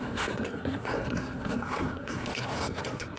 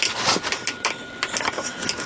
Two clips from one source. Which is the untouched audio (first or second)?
second